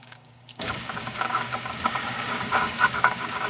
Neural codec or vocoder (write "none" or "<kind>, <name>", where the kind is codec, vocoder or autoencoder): codec, DAC